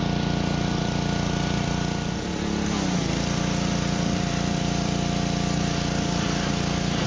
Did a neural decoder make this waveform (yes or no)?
yes